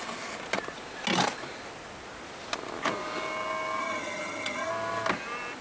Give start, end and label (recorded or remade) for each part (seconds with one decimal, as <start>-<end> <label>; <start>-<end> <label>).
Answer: 0.0-3.8 recorded; 3.8-4.7 remade; 4.7-5.6 recorded